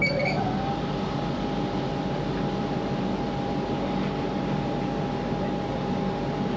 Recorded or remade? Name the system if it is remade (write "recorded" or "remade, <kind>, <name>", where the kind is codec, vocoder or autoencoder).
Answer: recorded